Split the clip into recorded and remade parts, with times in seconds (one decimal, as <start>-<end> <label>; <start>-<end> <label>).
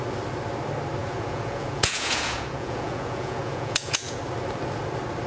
0.0-1.0 recorded; 1.0-4.2 remade; 4.2-5.3 recorded